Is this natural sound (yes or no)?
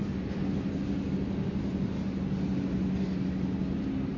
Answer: yes